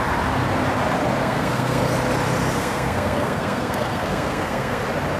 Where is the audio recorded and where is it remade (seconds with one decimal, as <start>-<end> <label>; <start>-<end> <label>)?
0.0-1.2 recorded; 1.2-1.8 remade; 1.8-2.6 recorded; 2.6-4.8 remade; 4.8-5.2 recorded